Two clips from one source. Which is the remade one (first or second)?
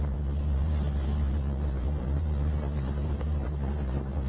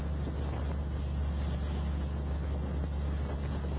first